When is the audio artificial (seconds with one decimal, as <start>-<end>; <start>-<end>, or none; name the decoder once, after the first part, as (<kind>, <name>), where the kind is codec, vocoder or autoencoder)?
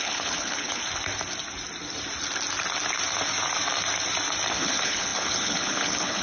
0.0-0.8 (codec, HILCodec); 4.5-6.2